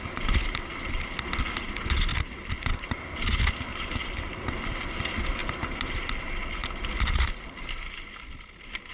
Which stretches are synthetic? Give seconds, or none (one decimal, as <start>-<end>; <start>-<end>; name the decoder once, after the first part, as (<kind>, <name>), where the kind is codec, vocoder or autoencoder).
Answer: 2.1-3.2 (vocoder, BigVGAN v2); 3.7-4.4; 6.6-7.3